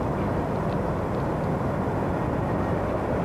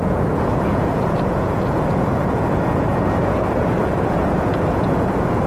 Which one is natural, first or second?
first